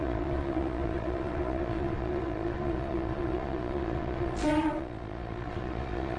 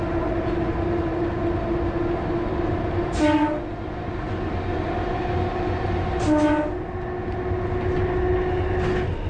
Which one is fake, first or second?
first